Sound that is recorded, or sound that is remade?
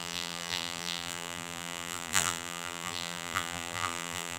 remade